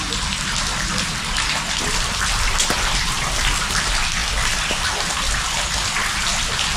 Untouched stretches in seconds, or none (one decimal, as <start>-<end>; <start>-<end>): 0.0-6.8